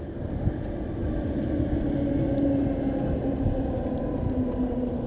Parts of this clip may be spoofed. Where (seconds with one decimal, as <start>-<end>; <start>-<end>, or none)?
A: none